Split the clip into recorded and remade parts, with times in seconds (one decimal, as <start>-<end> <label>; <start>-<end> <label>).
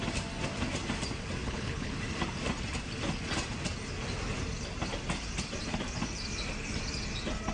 0.0-1.4 recorded; 1.4-1.9 remade; 1.9-7.5 recorded